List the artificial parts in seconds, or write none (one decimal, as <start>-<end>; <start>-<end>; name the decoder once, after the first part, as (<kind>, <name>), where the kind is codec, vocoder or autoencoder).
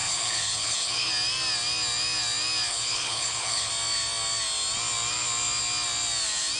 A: 0.0-1.1 (codec, HILCodec); 2.7-3.7